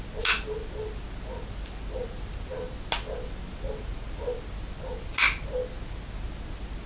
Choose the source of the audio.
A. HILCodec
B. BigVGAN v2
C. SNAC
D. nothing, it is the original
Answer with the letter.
D